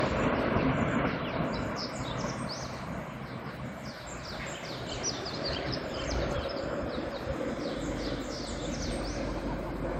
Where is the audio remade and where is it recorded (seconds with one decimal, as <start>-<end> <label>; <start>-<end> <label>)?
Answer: 0.0-5.5 recorded; 5.5-7.4 remade; 7.4-10.0 recorded